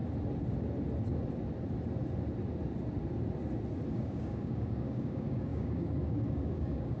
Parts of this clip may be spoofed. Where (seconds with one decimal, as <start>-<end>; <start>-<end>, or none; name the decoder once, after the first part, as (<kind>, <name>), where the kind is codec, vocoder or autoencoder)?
3.9-7.0 (codec, DAC)